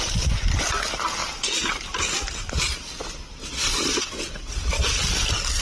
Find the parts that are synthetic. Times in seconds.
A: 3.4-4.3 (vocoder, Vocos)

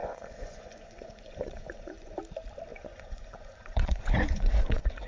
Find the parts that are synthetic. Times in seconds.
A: 0.0-2.2 (vocoder, Vocos); 2.7-5.1

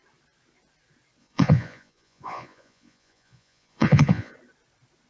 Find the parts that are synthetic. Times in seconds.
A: 1.2-4.3 (vocoder, Vocos)

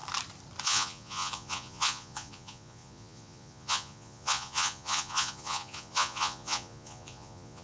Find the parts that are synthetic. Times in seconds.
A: 0.6-7.6 (vocoder, Vocos)

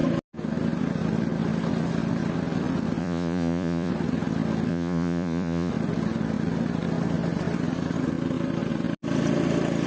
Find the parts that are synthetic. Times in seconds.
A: 3.0-3.9 (vocoder, Vocos); 4.7-5.7

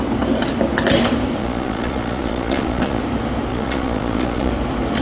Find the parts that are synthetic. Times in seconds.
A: 1.4-3.0 (vocoder, Vocos); 3.5-4.5

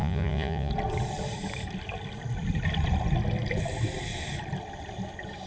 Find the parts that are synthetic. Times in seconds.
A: 0.0-0.7 (vocoder, Vocos)

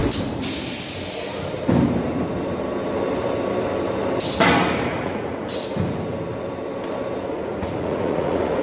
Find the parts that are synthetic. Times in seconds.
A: 4.9-5.5 (vocoder, Vocos); 7.3-8.6